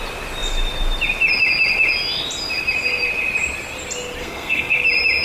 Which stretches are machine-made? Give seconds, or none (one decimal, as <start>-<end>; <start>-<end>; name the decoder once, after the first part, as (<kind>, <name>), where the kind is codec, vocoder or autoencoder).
4.2-4.8 (codec, SNAC)